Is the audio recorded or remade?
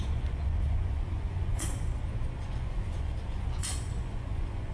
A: remade